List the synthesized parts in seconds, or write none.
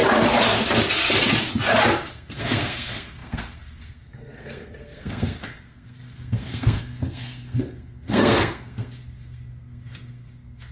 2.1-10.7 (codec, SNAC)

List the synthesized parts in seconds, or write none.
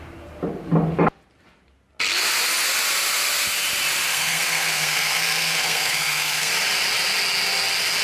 4.1-6.5 (codec, SNAC)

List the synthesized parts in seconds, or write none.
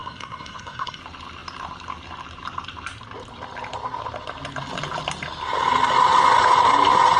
0.0-1.0 (codec, SNAC)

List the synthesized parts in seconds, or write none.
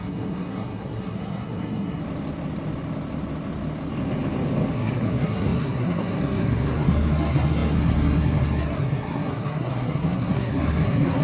0.0-2.0 (codec, SNAC); 4.7-11.2